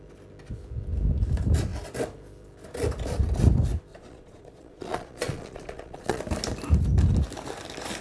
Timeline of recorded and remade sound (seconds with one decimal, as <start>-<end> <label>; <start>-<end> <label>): 0.0-3.9 recorded; 3.9-6.2 remade; 6.2-8.0 recorded